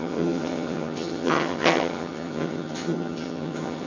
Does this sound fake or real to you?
fake